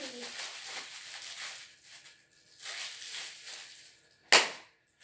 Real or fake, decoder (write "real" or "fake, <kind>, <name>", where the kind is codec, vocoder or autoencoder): real